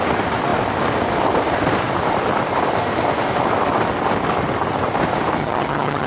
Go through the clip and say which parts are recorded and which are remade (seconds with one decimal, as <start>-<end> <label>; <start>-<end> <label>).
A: 0.0-5.4 recorded; 5.4-6.1 remade